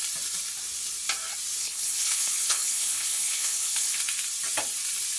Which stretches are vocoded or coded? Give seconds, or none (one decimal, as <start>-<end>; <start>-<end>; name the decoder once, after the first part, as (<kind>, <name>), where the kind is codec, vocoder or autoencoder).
1.6-4.0 (codec, HILCodec)